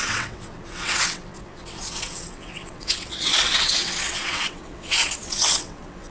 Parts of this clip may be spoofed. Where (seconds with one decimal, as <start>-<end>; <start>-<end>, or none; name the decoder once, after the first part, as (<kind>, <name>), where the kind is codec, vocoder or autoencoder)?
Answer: 0.0-6.1 (vocoder, WaveNeXt)